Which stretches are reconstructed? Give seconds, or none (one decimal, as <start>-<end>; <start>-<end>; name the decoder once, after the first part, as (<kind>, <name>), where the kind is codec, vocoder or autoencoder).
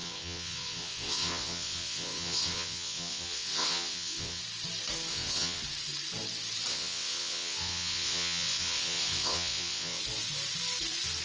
0.0-4.4 (vocoder, WaveNeXt); 5.1-5.6; 6.7-10.0